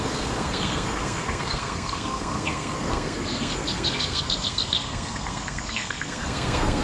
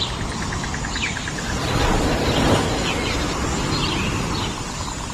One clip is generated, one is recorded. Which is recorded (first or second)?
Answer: second